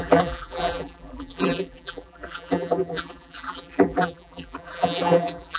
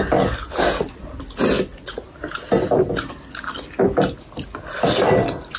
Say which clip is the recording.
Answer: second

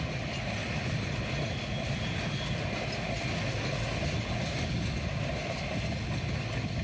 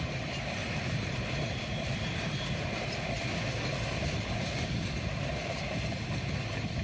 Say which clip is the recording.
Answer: first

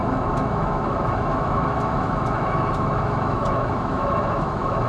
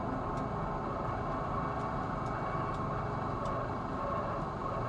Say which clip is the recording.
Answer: second